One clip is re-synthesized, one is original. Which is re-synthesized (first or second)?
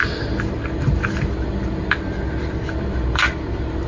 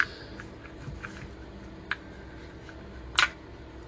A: first